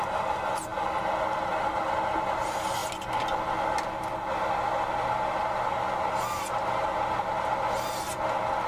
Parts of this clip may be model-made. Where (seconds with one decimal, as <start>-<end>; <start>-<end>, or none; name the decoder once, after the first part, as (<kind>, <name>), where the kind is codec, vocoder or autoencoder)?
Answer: none